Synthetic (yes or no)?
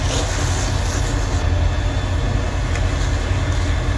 no